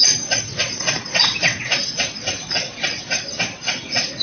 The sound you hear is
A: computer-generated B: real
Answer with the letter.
A